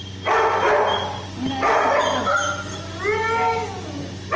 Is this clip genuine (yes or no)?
yes